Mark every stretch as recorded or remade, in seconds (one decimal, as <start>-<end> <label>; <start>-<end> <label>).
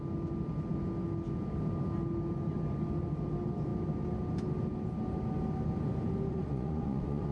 0.0-6.3 recorded; 6.3-7.3 remade